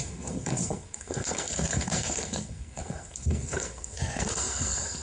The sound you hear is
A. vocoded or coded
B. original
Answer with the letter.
A